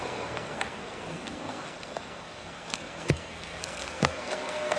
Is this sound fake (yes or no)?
yes